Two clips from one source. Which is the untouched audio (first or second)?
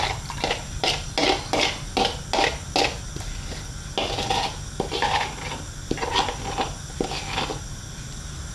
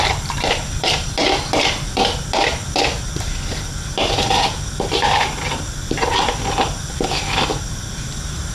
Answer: first